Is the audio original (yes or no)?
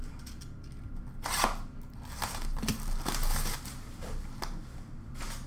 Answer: yes